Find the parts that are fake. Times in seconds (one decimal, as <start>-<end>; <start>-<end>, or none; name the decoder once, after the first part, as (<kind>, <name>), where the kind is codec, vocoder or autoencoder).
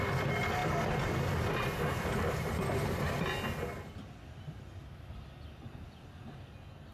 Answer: none